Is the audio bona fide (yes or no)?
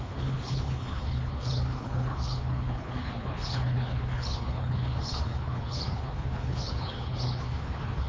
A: no